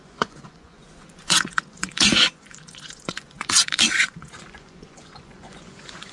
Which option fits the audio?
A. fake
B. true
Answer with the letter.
A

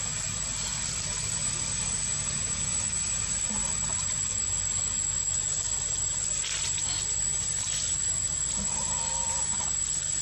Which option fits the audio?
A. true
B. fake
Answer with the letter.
A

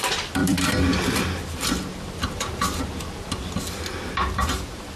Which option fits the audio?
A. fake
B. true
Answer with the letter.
A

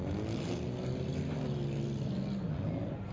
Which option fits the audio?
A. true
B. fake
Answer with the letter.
A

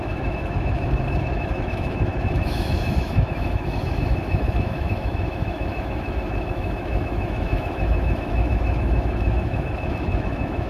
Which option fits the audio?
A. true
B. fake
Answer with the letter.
B